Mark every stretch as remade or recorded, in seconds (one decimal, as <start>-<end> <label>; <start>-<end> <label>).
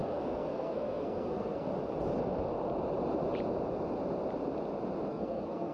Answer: 0.0-1.7 remade; 1.7-5.1 recorded; 5.1-5.7 remade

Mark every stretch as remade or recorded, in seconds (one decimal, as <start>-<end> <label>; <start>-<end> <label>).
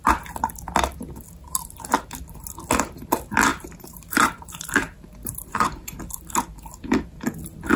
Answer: 0.0-3.5 recorded; 3.5-6.0 remade; 6.0-7.8 recorded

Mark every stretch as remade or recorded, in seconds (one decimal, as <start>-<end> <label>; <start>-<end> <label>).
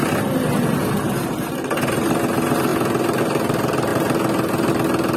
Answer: 0.0-5.2 recorded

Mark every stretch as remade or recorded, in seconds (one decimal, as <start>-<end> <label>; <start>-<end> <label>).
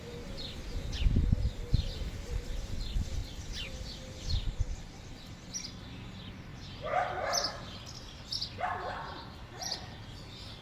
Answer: 0.0-3.2 recorded; 3.2-4.2 remade; 4.2-10.6 recorded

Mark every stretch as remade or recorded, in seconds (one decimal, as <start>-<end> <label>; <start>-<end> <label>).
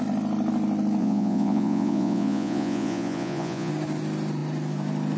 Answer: 0.0-1.0 recorded; 1.0-3.7 remade; 3.7-5.2 recorded